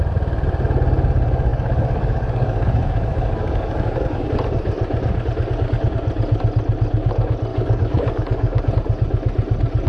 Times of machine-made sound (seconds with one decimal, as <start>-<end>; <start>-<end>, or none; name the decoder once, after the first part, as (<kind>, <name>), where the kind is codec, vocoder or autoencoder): 1.5-4.3 (codec, DAC); 7.5-8.7